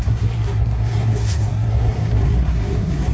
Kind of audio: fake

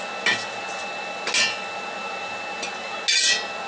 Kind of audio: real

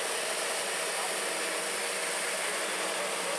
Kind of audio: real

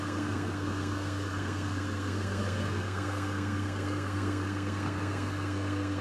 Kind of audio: fake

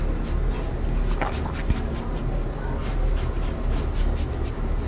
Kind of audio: real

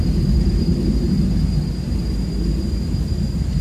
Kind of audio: real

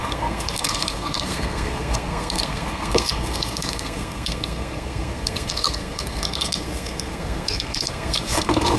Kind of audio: fake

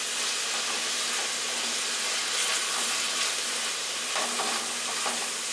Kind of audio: real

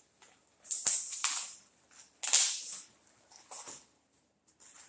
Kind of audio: real